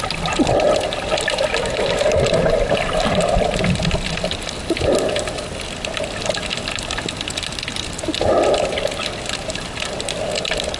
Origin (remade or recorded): recorded